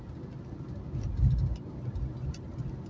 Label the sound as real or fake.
real